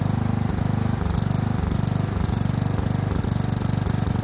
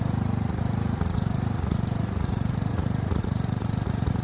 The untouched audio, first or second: first